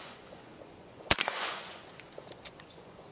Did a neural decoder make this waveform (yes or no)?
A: yes